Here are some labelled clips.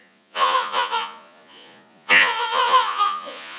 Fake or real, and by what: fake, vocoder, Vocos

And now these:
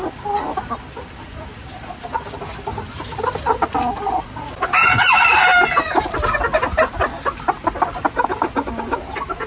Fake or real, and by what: real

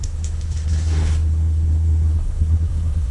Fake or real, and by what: fake, codec, SNAC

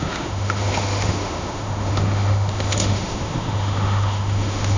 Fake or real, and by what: fake, autoencoder, DAC-VAE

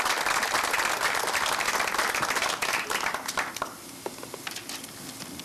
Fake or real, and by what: real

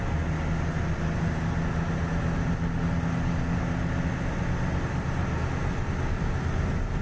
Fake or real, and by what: real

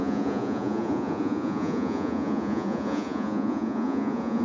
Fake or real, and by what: fake, vocoder, Vocos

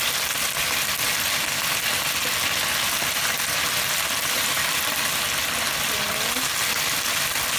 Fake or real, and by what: real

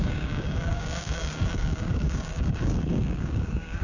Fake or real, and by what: fake, codec, DAC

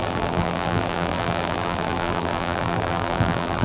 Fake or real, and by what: fake, vocoder, BigVGAN v2